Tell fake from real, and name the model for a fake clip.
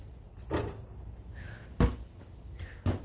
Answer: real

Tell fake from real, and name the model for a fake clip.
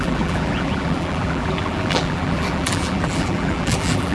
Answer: fake, vocoder, BigVGAN v2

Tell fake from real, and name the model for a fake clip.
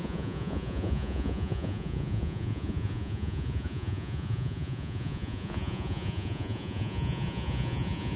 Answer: fake, vocoder, Vocos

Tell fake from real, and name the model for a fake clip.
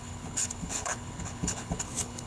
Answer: fake, codec, HILCodec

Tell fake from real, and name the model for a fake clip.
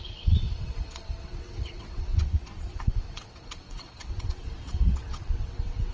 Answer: fake, vocoder, WaveNeXt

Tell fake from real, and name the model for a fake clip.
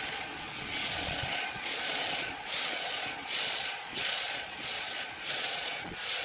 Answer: fake, vocoder, Vocos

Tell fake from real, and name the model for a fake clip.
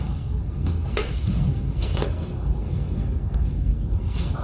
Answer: fake, codec, SNAC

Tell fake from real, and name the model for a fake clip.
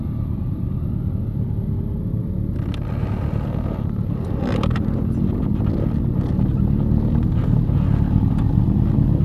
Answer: real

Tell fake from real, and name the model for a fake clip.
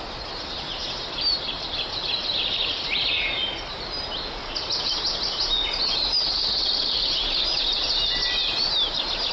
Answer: real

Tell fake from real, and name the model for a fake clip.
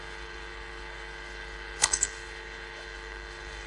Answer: fake, codec, HILCodec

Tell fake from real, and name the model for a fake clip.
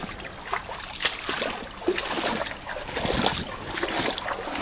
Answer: real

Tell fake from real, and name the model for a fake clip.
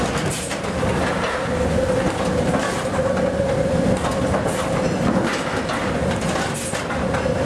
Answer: real